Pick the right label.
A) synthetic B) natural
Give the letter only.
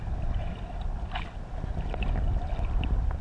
B